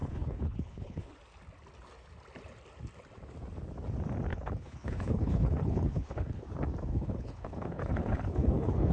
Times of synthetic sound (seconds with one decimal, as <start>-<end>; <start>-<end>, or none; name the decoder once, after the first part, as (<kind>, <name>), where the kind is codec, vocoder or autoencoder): 0.0-1.1 (codec, HILCodec); 4.3-6.4; 6.9-8.9